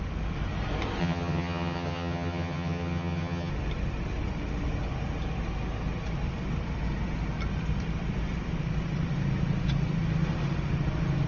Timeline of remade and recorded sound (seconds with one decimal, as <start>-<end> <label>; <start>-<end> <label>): 0.0-1.0 recorded; 1.0-3.5 remade; 3.5-11.3 recorded